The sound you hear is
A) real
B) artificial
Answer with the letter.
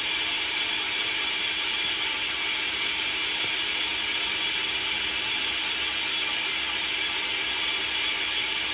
A